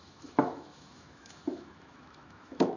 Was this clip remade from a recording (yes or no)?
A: yes